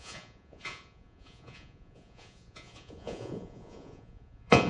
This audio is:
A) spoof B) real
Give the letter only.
A